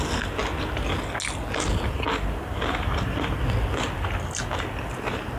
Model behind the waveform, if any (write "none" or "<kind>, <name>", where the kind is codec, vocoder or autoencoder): none